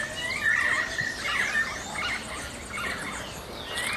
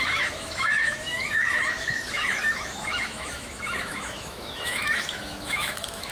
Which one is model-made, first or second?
second